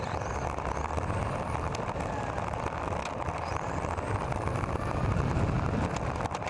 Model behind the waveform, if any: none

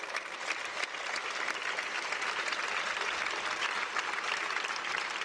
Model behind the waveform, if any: none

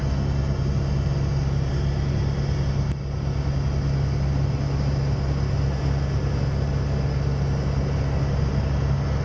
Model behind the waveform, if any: none